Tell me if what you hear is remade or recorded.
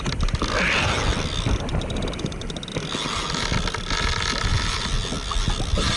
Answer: recorded